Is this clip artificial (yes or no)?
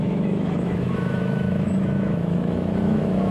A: yes